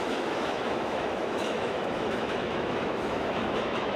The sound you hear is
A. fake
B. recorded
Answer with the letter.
A